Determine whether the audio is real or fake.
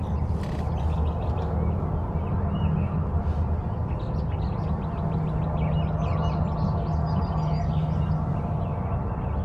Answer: real